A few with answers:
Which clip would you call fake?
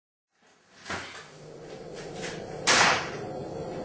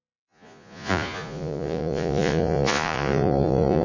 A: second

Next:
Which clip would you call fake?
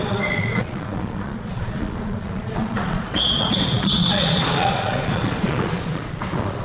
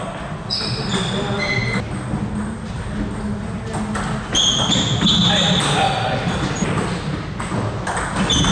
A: first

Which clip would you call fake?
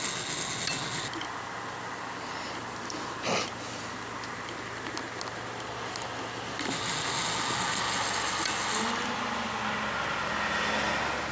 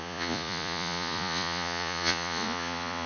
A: second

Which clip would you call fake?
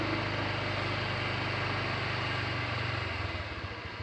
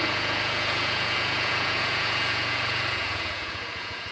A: second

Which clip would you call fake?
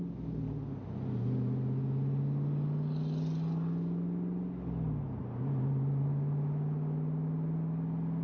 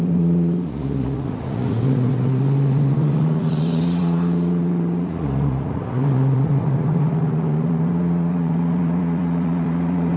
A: second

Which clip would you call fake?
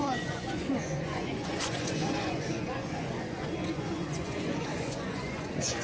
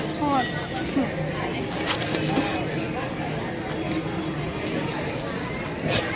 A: first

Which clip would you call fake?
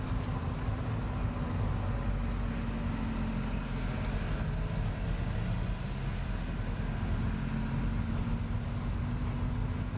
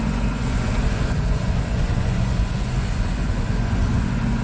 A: second